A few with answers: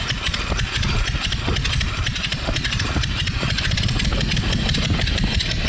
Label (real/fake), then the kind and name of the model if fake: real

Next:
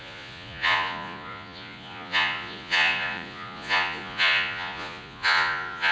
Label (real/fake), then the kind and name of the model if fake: fake, vocoder, Vocos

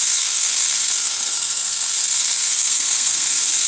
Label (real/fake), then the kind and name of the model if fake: fake, codec, SNAC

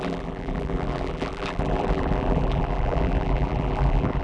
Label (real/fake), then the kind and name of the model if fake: fake, vocoder, BigVGAN v2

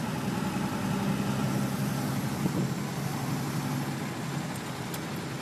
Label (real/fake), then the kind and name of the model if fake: real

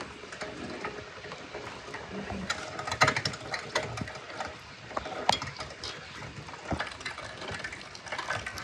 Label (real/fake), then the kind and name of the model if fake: real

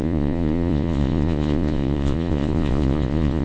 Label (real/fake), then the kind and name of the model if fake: fake, vocoder, Vocos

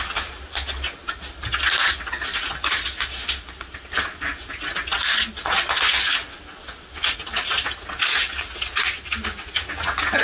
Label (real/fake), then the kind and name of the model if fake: real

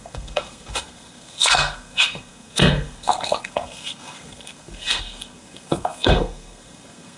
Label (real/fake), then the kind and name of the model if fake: fake, codec, SNAC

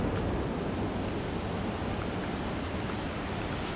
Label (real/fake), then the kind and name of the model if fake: real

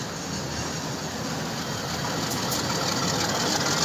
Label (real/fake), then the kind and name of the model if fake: real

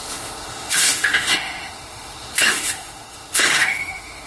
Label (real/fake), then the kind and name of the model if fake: fake, autoencoder, DAC-VAE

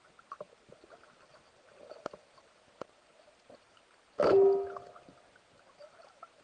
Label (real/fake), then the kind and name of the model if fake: real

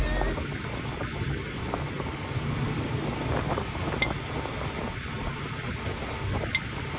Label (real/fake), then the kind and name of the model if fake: real